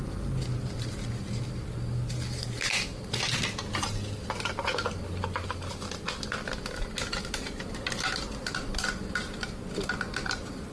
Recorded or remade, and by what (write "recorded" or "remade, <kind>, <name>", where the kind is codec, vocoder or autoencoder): recorded